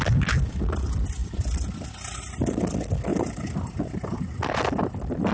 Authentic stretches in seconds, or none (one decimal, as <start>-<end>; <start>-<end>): 0.0-3.1; 4.6-5.3

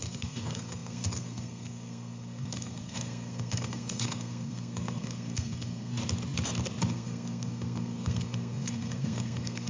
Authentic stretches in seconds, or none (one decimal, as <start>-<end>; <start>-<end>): 5.9-6.9

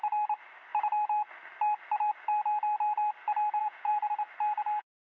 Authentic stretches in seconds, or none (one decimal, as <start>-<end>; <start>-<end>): 0.0-3.6; 4.1-5.1

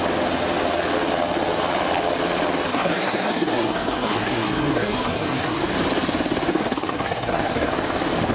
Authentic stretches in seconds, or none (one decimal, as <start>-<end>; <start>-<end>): 0.0-2.7; 5.6-6.5; 7.7-8.3

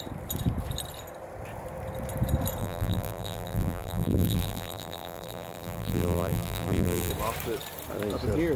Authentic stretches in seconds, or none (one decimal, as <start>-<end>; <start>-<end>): 0.0-2.6; 7.1-8.6